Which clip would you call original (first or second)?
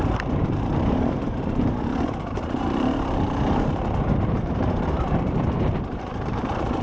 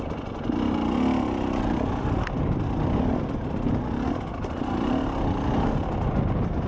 second